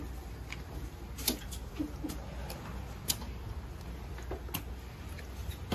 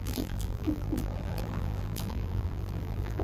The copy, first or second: second